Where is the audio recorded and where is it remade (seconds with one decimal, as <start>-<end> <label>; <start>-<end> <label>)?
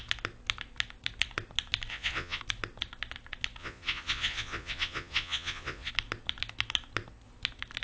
0.0-1.9 recorded; 1.9-2.4 remade; 2.4-3.6 recorded; 3.6-5.9 remade; 5.9-7.8 recorded